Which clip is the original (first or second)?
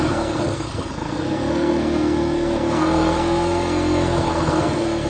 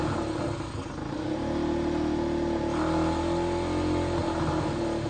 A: second